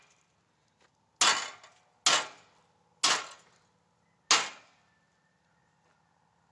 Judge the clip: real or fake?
real